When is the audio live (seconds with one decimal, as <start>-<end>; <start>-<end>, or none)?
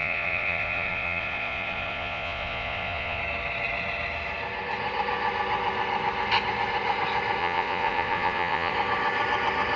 3.2-7.4; 8.7-9.8